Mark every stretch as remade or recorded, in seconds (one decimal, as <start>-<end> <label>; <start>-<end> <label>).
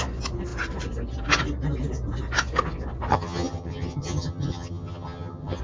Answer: 0.0-3.1 recorded; 3.1-5.6 remade